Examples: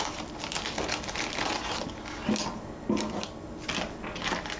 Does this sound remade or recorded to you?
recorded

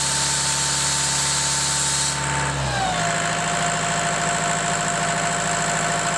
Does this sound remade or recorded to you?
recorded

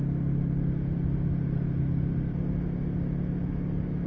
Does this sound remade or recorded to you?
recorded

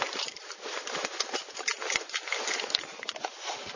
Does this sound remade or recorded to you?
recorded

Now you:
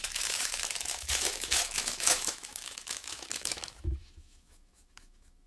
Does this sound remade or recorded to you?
remade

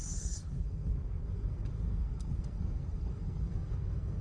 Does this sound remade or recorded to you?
remade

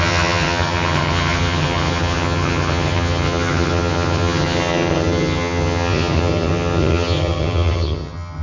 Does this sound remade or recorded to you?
remade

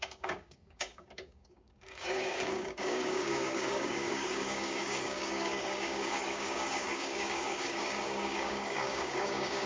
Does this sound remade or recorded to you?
remade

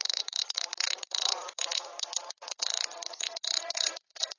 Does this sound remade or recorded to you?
remade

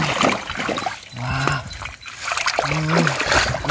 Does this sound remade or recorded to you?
recorded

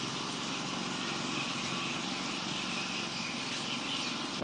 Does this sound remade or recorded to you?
recorded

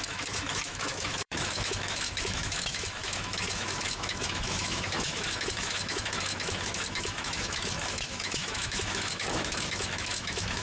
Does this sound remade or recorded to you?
remade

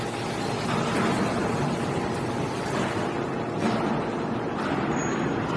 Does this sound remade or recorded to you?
recorded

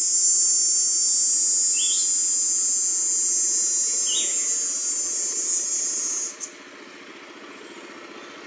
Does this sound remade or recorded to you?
recorded